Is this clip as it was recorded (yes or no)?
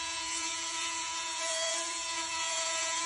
no